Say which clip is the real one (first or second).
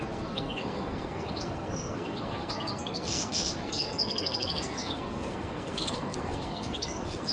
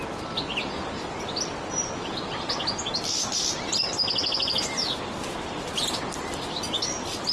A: second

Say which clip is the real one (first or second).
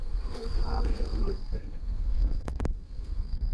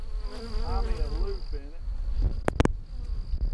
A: second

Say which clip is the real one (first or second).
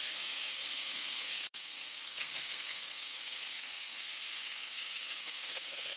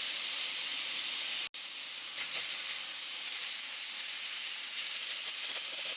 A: second